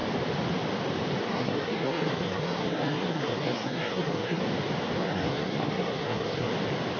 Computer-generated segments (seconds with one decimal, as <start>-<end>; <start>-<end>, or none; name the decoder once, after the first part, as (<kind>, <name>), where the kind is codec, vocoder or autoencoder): 1.3-4.4 (codec, SNAC); 5.0-6.5